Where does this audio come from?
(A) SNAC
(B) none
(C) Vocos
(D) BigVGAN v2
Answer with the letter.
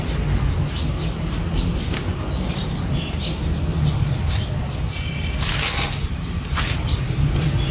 B